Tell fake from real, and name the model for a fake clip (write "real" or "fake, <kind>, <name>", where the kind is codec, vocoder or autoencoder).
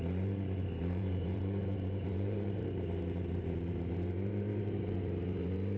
fake, vocoder, BigVGAN v2